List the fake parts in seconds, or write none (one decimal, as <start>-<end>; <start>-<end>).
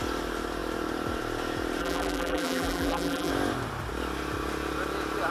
1.8-3.3